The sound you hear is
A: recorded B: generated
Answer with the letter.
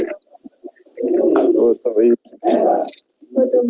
A